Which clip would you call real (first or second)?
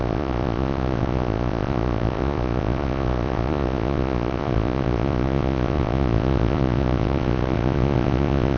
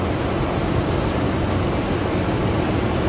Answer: second